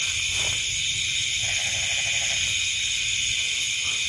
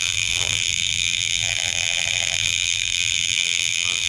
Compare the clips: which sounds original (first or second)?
first